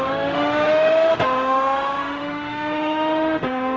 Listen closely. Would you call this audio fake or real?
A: fake